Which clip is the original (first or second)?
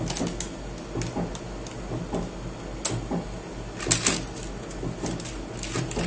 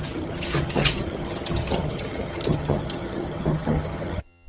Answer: first